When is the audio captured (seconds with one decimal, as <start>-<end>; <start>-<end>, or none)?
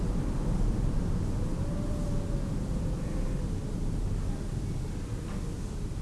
0.0-6.0